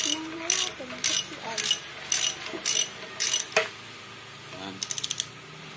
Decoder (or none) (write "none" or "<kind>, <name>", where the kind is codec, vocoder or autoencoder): none